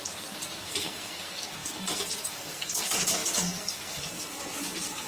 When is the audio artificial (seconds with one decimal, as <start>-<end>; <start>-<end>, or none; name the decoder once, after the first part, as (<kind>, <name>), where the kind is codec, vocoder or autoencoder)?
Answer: 0.0-5.1 (codec, SNAC)